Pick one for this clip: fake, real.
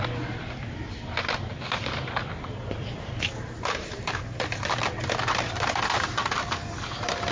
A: fake